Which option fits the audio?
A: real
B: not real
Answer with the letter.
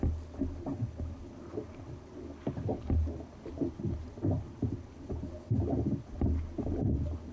A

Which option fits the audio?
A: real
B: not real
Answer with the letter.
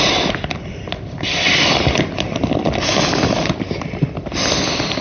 B